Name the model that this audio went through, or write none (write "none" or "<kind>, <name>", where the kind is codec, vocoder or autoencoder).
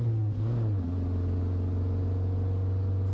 none